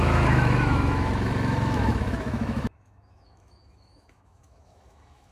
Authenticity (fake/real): fake